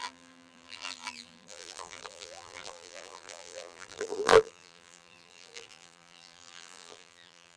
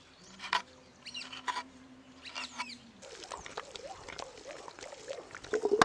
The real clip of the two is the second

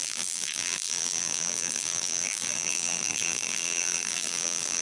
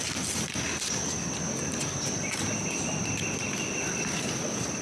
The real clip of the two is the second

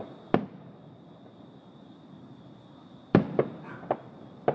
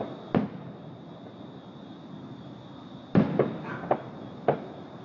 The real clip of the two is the second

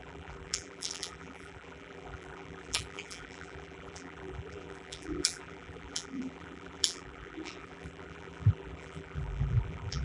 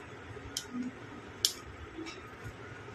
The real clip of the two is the second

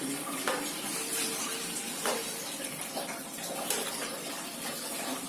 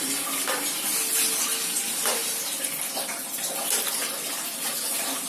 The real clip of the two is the second